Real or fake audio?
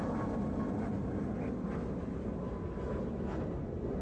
real